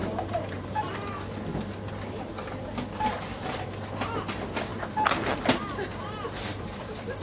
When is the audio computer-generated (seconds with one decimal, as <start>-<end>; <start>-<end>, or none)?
0.0-0.8; 6.5-7.2

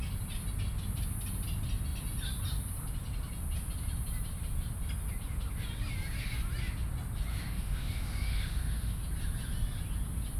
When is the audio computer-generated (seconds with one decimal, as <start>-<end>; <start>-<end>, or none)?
7.3-9.0

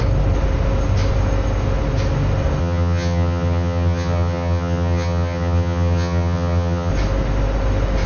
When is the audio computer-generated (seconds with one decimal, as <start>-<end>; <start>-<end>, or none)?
2.6-6.9